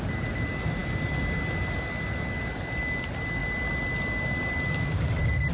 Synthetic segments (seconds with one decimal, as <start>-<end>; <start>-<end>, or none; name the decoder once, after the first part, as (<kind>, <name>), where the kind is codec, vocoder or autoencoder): none